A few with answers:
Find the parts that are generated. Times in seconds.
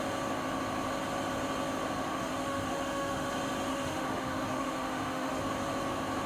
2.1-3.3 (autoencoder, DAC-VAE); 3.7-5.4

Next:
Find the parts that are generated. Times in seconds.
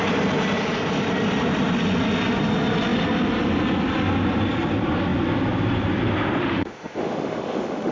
6.4-7.9 (autoencoder, DAC-VAE)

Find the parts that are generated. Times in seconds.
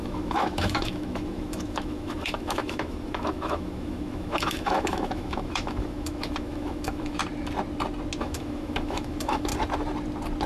0.0-7.2 (autoencoder, DAC-VAE); 8.2-9.5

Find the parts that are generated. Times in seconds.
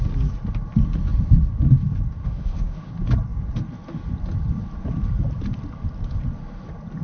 2.2-2.9 (autoencoder, DAC-VAE)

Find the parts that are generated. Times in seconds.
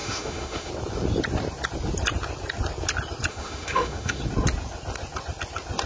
0.0-0.7 (autoencoder, DAC-VAE); 3.3-4.2